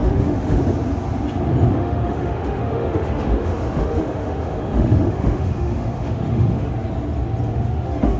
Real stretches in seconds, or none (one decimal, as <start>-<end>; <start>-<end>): 0.6-1.8; 6.7-7.5